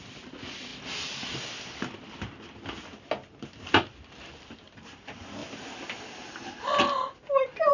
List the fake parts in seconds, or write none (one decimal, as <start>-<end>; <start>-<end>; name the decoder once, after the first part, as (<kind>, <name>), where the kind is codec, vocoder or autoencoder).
none